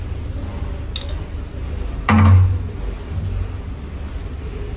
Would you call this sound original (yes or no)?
yes